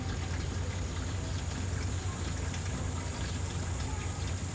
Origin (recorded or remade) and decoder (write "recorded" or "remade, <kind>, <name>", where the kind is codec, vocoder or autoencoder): recorded